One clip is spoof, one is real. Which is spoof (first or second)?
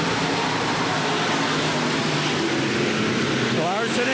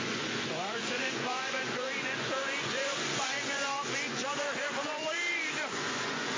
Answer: second